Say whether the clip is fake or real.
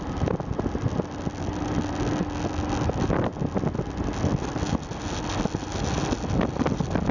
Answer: real